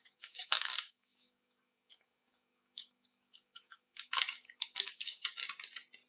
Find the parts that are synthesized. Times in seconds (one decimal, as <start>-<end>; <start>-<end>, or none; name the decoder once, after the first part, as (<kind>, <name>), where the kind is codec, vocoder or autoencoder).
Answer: 0.0-5.4 (codec, DAC)